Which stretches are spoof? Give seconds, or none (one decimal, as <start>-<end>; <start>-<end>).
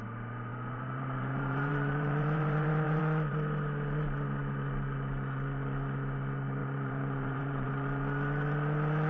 0.5-3.0; 6.6-7.7